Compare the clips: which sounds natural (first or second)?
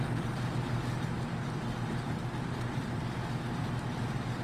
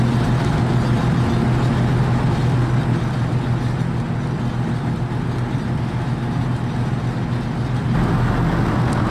second